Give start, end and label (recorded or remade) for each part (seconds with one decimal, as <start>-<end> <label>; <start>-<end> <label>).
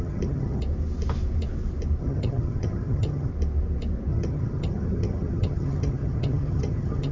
0.0-0.6 remade; 0.6-2.0 recorded; 2.0-3.3 remade; 3.3-4.1 recorded; 4.1-7.1 remade